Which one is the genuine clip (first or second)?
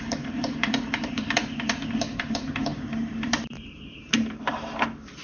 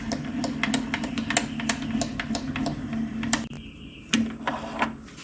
second